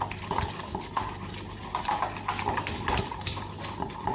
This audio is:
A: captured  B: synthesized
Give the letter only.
A